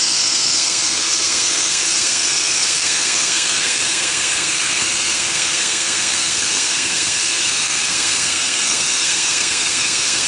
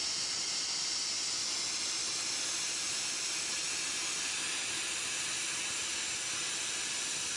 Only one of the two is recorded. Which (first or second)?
second